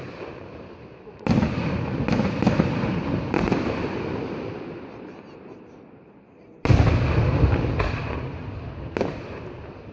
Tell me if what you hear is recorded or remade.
recorded